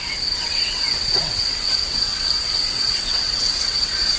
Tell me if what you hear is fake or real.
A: fake